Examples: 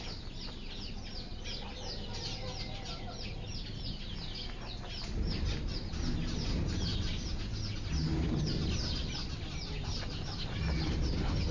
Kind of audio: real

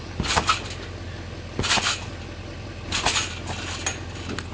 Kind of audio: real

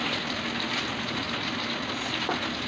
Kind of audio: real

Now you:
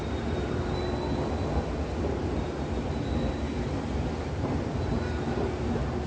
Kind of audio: real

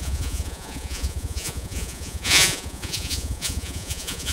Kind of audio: fake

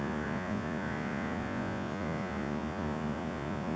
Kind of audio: fake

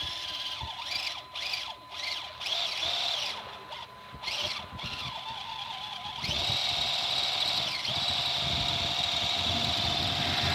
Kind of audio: real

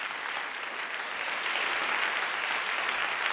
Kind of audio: fake